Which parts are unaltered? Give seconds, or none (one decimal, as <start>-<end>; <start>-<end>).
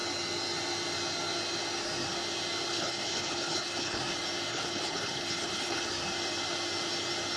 0.0-2.7; 4.0-4.5; 5.8-7.4